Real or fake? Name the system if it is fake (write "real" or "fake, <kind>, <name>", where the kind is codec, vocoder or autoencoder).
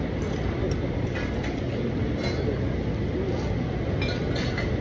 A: real